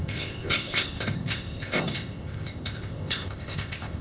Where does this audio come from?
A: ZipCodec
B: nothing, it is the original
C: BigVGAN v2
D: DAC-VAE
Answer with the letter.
A